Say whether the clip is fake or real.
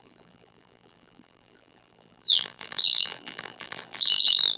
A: fake